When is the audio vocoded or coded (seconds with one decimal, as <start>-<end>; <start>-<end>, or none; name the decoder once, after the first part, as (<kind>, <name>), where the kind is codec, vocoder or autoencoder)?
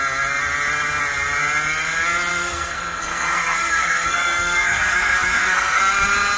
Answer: 2.3-5.8 (codec, SNAC)